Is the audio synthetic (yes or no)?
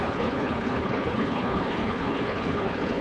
yes